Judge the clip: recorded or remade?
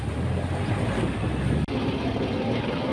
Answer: recorded